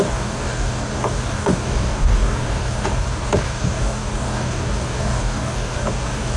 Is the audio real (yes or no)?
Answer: no